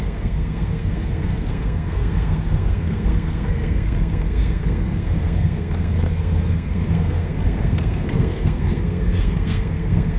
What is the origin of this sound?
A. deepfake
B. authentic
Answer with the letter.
A